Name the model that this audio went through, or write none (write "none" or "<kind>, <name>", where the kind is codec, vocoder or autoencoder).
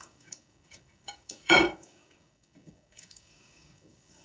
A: codec, DAC